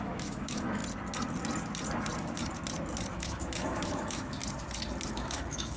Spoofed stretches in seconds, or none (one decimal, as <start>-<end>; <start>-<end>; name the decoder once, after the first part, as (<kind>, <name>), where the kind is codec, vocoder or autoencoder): 0.0-0.8 (autoencoder, DAC-VAE); 3.1-4.4; 5.1-5.8